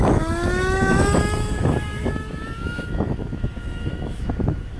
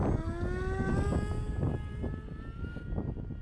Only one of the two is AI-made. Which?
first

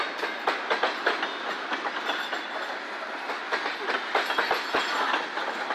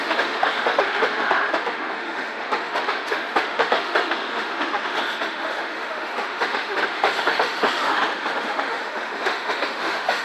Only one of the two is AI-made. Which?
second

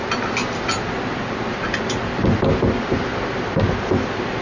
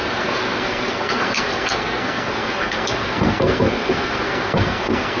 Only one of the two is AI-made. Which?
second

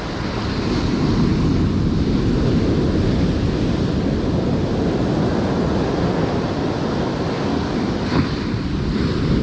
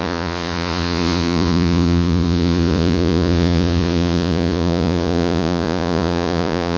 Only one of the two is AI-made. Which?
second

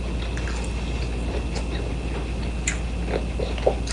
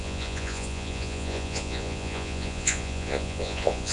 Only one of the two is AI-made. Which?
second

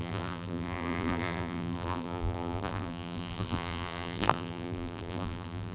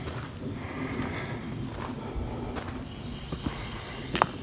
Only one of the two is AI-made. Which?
first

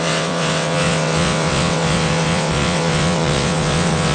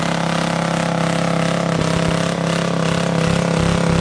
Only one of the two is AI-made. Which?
first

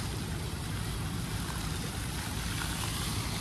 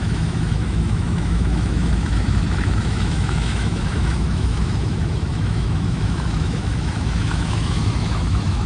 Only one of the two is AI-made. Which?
second